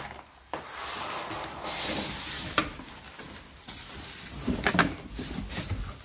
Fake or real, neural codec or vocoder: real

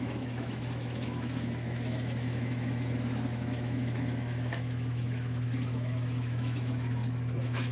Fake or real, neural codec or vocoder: fake, autoencoder, DAC-VAE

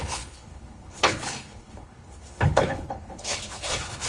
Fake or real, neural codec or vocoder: fake, codec, HILCodec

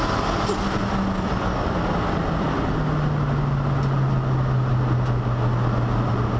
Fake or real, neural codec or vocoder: real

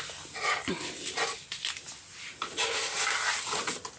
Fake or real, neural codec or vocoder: real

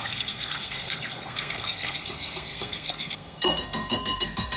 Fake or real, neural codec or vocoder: fake, codec, SNAC